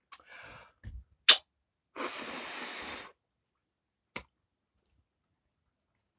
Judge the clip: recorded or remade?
recorded